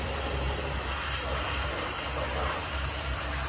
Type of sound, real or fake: real